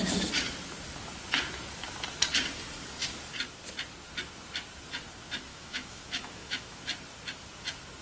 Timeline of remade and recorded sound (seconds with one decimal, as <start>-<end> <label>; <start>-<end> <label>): 0.0-5.5 recorded; 5.5-6.8 remade; 6.8-8.0 recorded